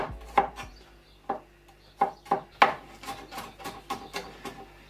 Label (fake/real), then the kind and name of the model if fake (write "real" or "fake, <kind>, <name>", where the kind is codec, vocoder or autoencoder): real